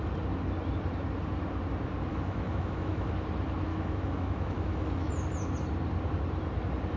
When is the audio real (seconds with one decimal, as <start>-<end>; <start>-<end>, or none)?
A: 0.0-2.1; 3.1-3.7; 5.1-7.0